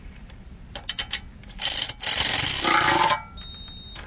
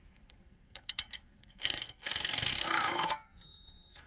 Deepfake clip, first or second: second